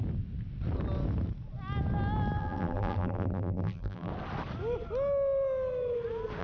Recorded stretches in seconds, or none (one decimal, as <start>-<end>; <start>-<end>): 0.0-2.4; 4.1-6.4